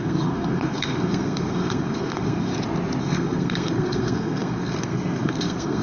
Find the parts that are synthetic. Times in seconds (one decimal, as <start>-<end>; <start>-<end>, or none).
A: 0.0-2.5; 3.0-5.8